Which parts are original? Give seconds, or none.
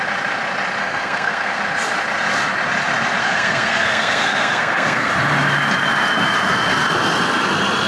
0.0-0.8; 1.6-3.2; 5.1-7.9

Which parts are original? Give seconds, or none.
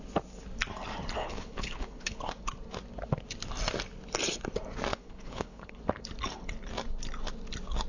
0.0-1.2; 2.3-4.9; 5.8-7.9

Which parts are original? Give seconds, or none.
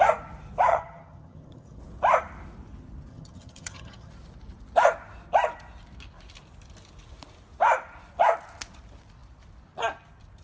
0.0-0.7; 1.8-3.1; 4.1-10.4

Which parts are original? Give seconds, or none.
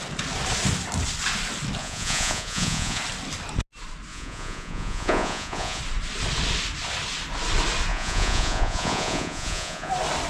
0.0-1.8; 3.0-4.1; 5.8-7.9; 9.9-10.3